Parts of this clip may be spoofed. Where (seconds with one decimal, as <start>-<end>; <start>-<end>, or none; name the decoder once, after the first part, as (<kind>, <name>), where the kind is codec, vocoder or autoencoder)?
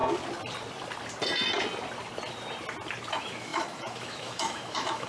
3.1-5.1 (autoencoder, DAC-VAE)